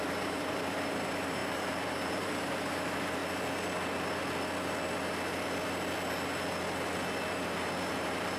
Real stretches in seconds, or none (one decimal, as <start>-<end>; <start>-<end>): 3.2-7.9